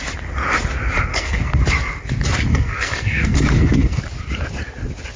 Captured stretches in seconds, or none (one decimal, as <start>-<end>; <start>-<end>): 0.0-1.1; 1.6-2.5; 4.0-5.2